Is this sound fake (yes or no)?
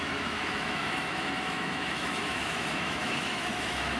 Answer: yes